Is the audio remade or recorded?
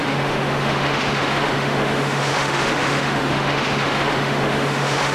remade